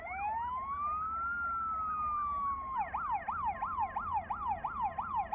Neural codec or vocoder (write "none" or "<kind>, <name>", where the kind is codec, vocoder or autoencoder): none